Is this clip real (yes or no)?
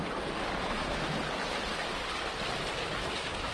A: yes